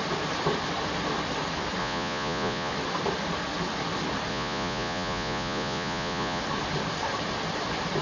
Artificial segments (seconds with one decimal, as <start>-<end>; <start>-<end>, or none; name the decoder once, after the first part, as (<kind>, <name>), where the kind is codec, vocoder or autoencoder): 1.8-2.7 (vocoder, Vocos); 4.3-6.4